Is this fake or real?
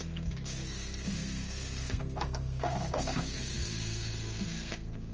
fake